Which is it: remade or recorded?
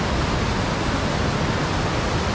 recorded